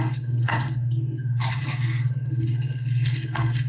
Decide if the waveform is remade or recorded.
remade